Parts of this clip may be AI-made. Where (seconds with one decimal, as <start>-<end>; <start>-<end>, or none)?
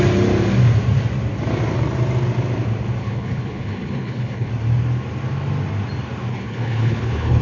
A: 3.0-4.5; 6.3-7.4